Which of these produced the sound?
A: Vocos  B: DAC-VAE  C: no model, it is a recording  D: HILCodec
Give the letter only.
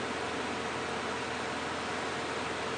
C